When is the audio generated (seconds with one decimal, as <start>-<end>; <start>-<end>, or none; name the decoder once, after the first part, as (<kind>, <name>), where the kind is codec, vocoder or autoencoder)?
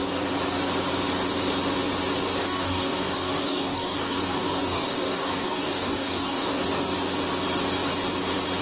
2.4-6.6 (codec, DAC)